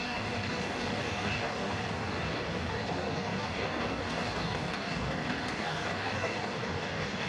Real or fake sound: fake